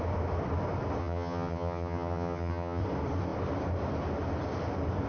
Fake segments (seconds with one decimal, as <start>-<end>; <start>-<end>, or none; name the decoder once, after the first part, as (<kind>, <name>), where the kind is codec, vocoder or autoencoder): 1.0-2.8 (vocoder, HiFi-GAN)